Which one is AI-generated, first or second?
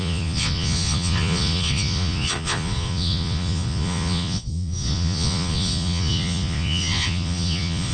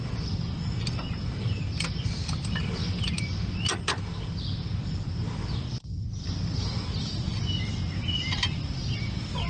first